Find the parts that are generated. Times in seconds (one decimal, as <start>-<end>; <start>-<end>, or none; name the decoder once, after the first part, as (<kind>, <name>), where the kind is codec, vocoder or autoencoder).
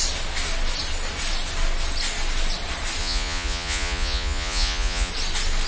3.0-5.1 (vocoder, Vocos)